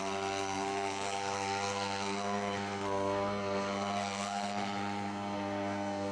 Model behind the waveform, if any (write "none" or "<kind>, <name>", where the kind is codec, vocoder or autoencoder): codec, SNAC